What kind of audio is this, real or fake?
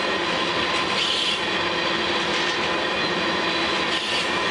real